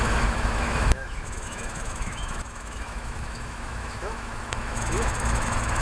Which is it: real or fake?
fake